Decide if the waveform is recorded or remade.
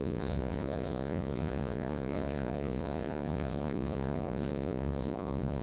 remade